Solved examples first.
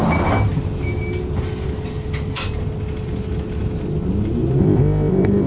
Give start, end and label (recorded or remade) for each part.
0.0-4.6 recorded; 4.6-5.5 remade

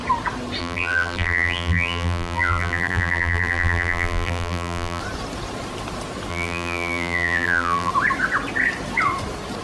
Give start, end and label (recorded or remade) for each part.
0.0-0.6 recorded; 0.6-5.0 remade; 5.0-6.3 recorded; 6.3-7.9 remade; 7.9-9.6 recorded

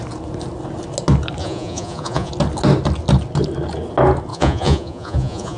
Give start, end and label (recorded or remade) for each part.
0.0-1.4 recorded; 1.4-2.3 remade; 2.3-4.3 recorded; 4.3-5.6 remade